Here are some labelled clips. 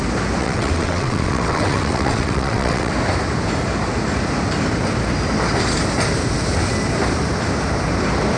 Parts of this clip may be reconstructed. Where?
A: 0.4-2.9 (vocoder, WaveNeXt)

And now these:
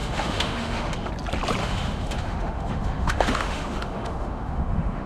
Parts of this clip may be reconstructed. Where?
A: 0.0-1.1 (autoencoder, DAC-VAE); 1.6-5.1

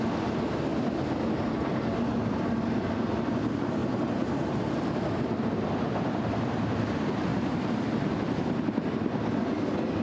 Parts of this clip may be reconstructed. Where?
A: 3.8-4.8 (vocoder, BigVGAN v2); 7.3-8.1

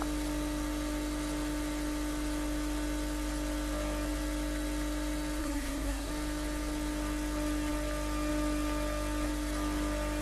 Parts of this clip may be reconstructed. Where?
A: 5.4-6.1 (codec, SNAC)

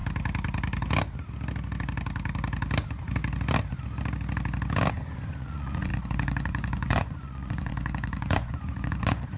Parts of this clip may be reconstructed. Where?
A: 4.9-9.4 (vocoder, Vocos)

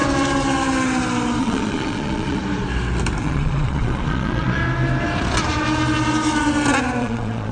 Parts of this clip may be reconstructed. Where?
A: 1.4-2.4 (vocoder, Vocos); 3.2-4.6; 7.0-7.5